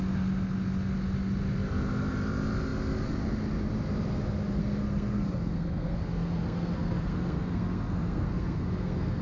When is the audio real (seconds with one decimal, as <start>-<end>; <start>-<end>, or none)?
0.0-4.6